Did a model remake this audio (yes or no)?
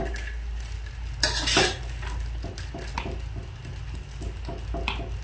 no